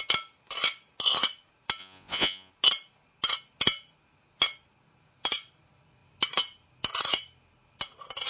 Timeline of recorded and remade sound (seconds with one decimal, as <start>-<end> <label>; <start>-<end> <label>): 0.0-1.8 recorded; 1.8-2.5 remade; 2.5-8.3 recorded